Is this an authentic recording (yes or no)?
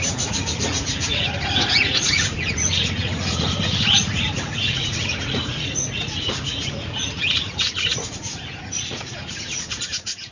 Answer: no